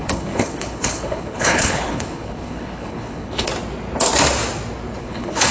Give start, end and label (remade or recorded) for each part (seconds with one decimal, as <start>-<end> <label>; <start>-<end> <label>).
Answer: 0.0-3.5 remade; 3.5-5.0 recorded; 5.0-5.5 remade